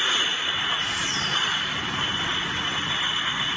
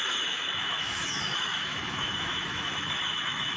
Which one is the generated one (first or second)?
second